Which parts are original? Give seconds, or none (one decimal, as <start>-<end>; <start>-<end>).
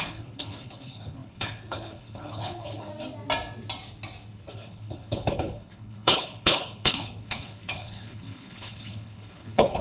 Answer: 2.9-4.5